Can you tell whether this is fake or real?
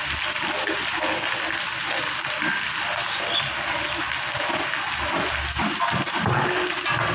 real